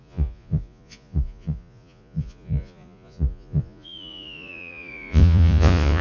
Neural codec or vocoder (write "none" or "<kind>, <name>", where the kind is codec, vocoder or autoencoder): vocoder, Vocos